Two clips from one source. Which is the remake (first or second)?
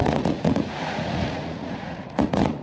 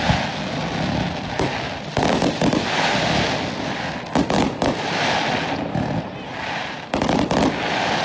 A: first